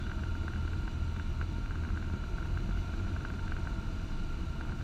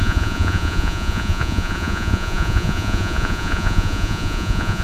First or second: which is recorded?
first